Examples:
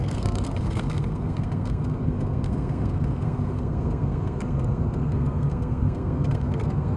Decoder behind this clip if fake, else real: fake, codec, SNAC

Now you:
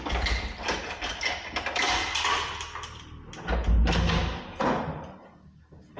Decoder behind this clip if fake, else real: real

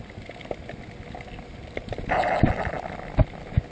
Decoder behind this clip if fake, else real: real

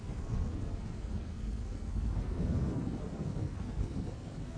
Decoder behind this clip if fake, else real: fake, codec, SNAC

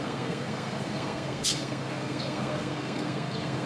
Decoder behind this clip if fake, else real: fake, codec, SNAC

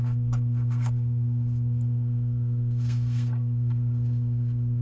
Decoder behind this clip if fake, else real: fake, codec, SNAC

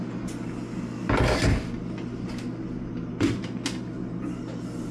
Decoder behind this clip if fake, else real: real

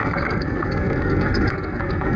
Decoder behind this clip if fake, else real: fake, codec, SNAC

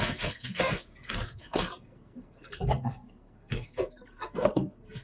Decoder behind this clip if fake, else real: fake, codec, SNAC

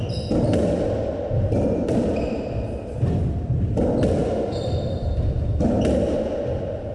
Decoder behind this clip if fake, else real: real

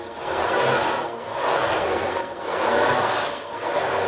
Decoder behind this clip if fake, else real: fake, codec, SNAC